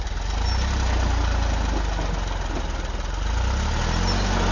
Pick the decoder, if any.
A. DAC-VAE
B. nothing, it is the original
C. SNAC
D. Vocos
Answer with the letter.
B